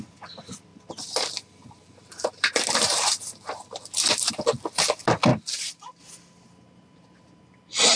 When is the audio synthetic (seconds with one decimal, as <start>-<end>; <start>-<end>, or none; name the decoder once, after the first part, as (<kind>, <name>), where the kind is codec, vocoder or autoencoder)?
0.7-4.3 (vocoder, BigVGAN v2)